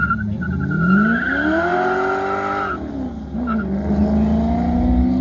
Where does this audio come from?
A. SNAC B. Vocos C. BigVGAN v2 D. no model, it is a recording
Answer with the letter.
D